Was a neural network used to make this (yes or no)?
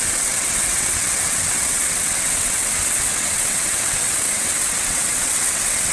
yes